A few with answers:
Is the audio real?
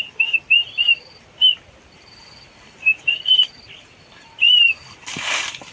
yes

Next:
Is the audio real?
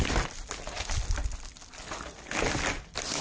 yes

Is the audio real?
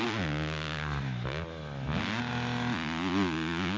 yes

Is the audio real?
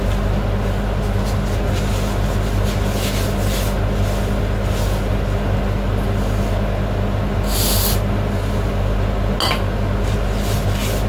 yes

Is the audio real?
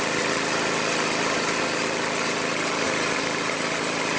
yes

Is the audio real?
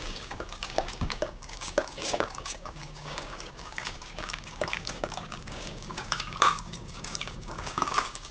no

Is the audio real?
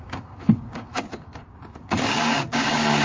no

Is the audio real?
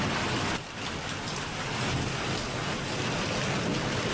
yes